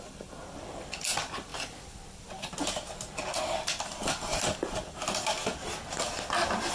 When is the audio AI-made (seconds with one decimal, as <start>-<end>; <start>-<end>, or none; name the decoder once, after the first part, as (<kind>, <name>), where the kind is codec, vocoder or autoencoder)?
none